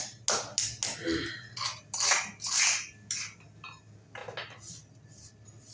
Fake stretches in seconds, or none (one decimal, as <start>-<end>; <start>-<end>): none